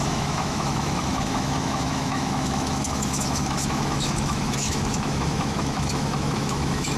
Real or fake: fake